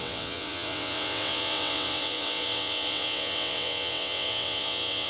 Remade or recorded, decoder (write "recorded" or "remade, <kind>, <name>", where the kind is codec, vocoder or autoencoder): remade, vocoder, WaveNeXt